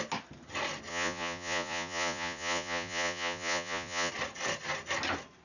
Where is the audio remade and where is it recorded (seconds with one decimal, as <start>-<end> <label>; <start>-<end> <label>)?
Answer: 0.0-0.9 recorded; 0.9-4.1 remade; 4.1-5.4 recorded